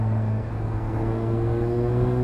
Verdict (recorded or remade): remade